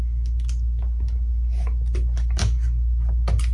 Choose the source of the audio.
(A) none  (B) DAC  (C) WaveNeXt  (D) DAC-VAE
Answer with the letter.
A